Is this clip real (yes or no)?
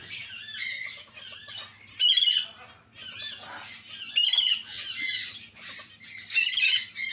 yes